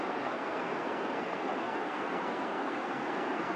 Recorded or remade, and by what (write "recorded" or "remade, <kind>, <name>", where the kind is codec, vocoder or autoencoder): remade, codec, SNAC